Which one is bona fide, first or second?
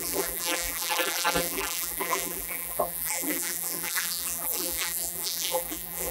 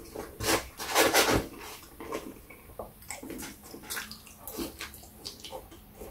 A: second